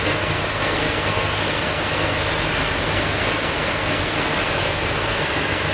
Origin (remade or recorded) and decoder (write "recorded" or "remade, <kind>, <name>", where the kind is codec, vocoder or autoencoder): remade, codec, SNAC